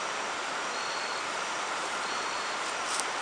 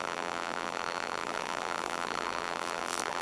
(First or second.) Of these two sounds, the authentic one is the first